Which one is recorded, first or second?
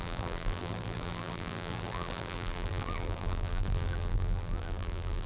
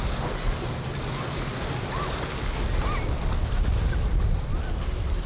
second